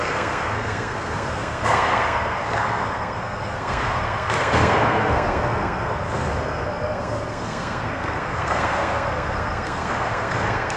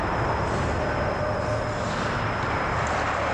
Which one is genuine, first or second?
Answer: second